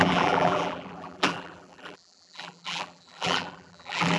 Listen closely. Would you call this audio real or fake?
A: fake